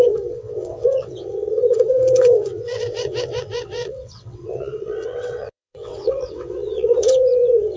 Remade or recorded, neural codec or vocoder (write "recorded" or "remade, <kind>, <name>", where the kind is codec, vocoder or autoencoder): remade, vocoder, WaveNeXt